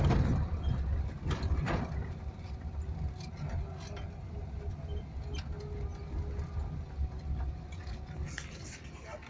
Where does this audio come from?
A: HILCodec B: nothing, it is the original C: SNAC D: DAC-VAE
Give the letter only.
B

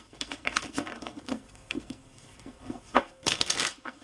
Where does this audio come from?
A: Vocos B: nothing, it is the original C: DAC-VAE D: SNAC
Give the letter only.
D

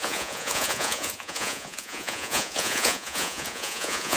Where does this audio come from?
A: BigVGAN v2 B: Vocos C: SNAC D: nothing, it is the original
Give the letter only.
B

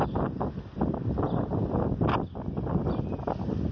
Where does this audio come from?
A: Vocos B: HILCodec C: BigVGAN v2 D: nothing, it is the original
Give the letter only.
D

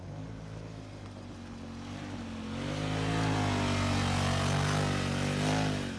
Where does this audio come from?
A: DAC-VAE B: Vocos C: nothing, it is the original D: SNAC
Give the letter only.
C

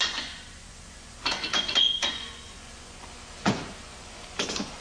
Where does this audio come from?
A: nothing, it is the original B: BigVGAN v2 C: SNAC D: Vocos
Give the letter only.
D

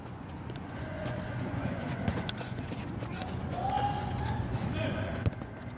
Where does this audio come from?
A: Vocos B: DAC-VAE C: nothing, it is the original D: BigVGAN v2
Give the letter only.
A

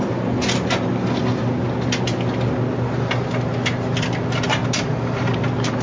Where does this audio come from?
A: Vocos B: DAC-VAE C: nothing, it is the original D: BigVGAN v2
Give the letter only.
C